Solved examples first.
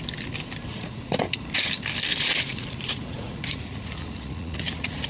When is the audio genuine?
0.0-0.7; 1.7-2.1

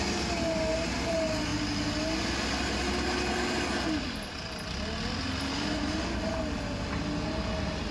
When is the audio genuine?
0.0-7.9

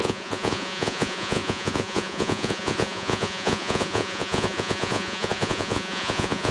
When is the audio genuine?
none

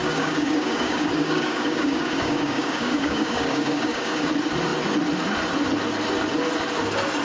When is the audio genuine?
4.3-7.2

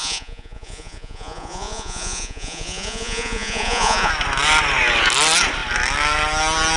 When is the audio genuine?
4.1-6.8

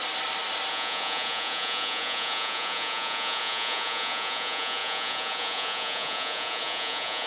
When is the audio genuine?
0.0-0.7

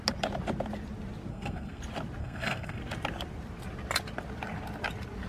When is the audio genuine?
0.0-1.3; 1.8-2.2; 2.8-5.3

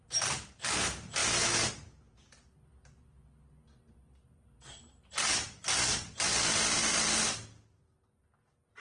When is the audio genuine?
0.0-8.8